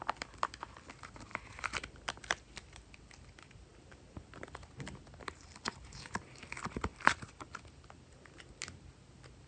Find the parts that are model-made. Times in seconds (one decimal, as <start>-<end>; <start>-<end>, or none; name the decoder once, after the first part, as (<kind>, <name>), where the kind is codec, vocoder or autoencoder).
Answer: 1.3-3.0 (vocoder, BigVGAN v2); 6.9-8.4